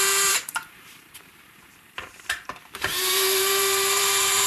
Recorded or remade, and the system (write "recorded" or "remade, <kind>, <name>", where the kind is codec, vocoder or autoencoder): remade, vocoder, BigVGAN v2